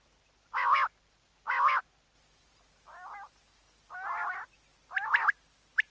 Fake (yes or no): no